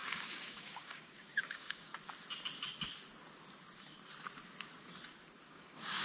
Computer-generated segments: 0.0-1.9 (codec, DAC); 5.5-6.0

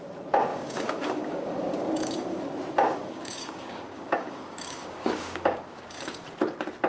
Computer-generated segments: 0.5-2.4 (codec, DAC); 3.0-6.2